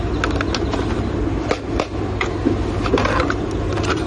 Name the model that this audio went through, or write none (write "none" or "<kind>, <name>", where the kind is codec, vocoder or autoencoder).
none